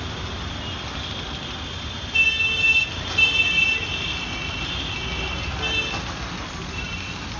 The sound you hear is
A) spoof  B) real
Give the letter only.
B